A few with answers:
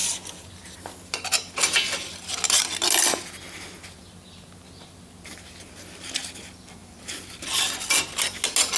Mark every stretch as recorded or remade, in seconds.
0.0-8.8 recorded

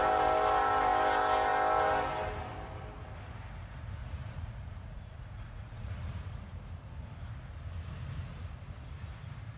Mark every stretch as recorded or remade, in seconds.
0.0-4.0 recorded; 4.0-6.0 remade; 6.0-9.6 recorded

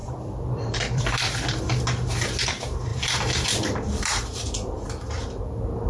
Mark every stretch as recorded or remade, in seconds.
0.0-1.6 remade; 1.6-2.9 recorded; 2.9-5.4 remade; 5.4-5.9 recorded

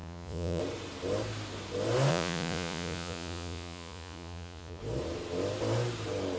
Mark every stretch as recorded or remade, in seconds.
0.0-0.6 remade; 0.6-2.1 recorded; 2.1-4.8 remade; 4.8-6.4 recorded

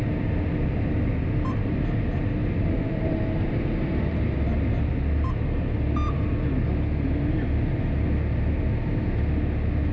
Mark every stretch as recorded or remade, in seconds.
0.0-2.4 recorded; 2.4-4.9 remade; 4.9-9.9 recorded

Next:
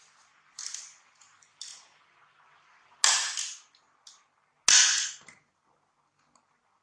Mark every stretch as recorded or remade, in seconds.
0.0-6.8 recorded

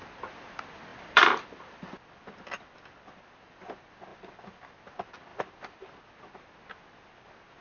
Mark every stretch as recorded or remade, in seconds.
0.0-0.9 recorded; 0.9-2.5 remade; 2.5-4.1 recorded; 4.1-4.7 remade; 4.7-5.3 recorded; 5.3-6.0 remade; 6.0-7.6 recorded

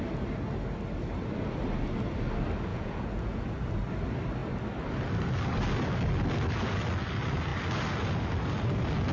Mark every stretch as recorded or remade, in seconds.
0.0-2.7 recorded; 2.7-3.4 remade; 3.4-9.1 recorded